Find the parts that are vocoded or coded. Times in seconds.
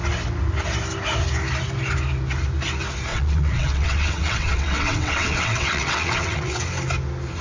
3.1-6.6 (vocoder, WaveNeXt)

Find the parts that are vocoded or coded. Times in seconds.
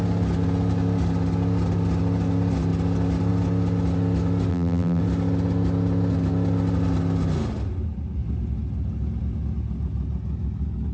4.5-5.0 (vocoder, BigVGAN v2)